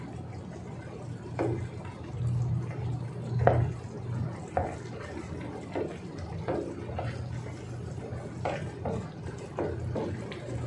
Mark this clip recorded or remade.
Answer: recorded